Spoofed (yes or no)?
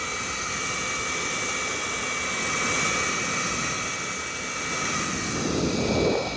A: no